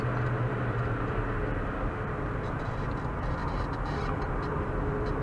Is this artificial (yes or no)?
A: no